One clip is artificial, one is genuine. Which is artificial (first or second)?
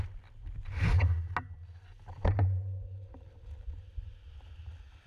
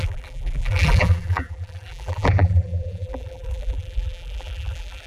second